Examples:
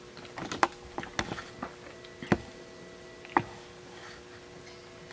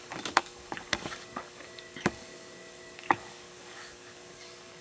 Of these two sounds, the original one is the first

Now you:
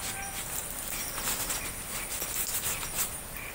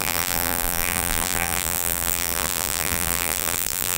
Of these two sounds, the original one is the first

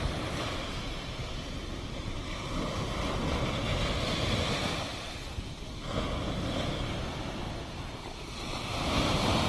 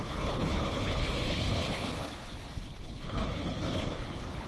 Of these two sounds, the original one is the first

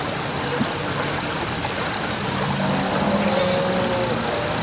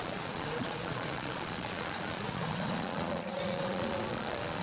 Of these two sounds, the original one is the first